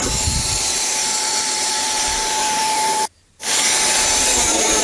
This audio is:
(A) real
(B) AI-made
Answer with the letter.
B